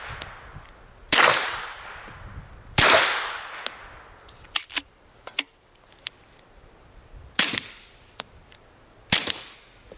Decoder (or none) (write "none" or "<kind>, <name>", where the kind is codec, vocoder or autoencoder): none